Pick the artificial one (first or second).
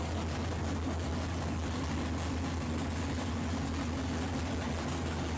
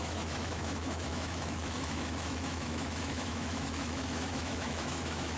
second